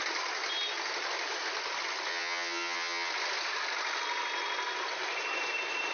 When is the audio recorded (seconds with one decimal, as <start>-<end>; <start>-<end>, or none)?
0.0-2.1; 3.1-5.9